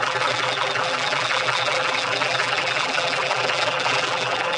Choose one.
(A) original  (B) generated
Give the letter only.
B